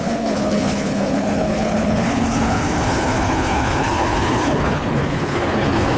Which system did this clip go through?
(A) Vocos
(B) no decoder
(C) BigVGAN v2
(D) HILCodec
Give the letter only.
D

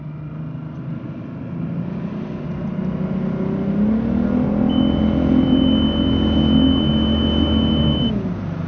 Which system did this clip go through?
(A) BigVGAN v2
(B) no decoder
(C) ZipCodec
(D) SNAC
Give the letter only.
B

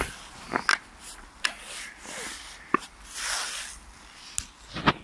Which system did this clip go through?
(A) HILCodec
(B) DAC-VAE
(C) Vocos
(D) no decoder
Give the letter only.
D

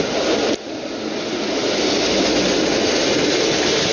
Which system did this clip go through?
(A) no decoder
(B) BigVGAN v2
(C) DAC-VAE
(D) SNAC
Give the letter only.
A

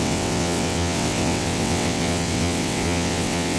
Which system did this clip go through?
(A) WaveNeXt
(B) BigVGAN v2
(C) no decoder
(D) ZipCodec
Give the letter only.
A